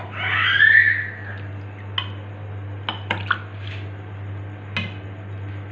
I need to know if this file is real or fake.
real